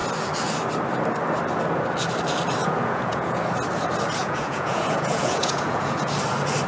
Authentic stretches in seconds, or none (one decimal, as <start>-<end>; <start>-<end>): 0.0-2.6; 3.4-4.2; 6.1-6.7